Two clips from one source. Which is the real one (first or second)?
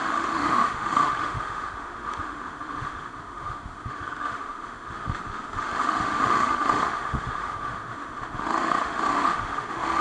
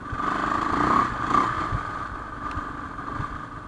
second